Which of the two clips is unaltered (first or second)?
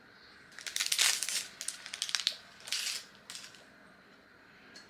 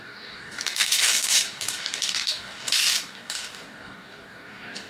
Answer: first